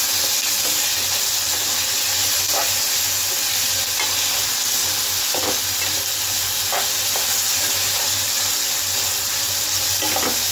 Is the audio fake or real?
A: real